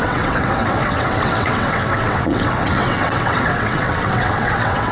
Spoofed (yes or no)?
yes